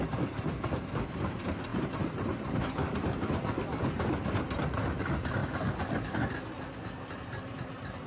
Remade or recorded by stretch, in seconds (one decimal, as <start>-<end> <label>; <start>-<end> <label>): 0.0-5.4 remade; 5.4-7.2 recorded; 7.2-8.1 remade